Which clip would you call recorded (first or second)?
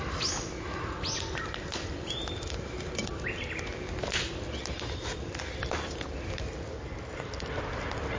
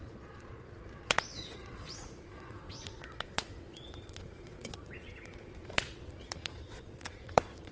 first